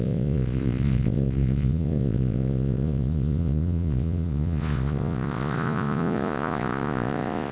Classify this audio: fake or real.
fake